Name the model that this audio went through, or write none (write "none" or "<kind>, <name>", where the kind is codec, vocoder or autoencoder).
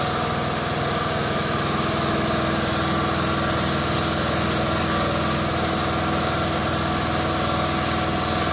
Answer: none